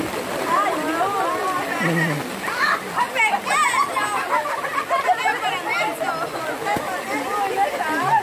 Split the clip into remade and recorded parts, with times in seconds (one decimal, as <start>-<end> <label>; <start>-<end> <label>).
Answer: 0.0-8.2 recorded